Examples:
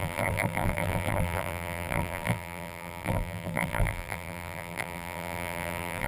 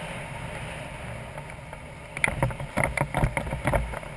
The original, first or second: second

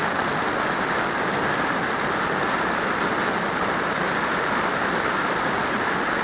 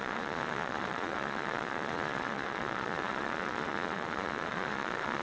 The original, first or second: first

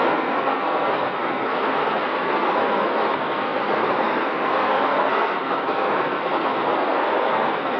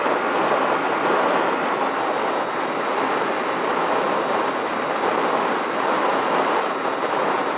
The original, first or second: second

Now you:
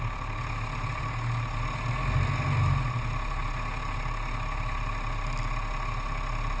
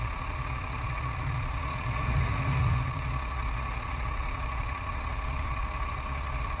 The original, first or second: first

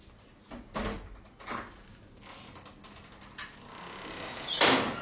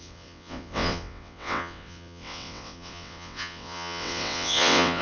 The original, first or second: first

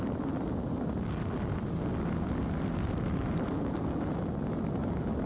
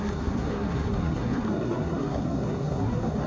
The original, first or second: first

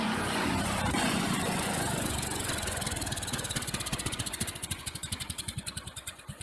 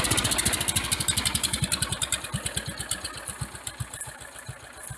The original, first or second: second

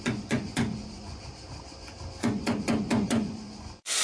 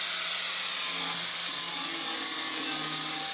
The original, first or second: second